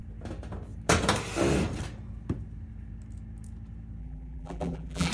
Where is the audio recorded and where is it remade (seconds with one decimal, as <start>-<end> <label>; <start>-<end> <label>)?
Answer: 0.0-4.0 recorded; 4.0-5.1 remade